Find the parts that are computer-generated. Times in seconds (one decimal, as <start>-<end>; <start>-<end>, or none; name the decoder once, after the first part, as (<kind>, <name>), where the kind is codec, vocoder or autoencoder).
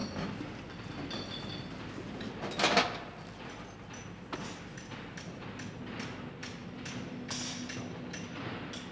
none